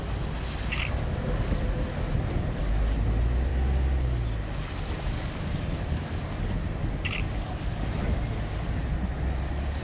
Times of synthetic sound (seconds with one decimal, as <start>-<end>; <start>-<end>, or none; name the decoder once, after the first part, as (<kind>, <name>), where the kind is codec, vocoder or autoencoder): none